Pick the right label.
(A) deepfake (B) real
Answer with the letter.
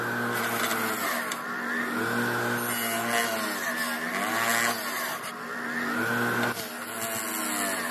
B